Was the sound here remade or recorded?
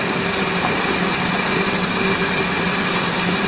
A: recorded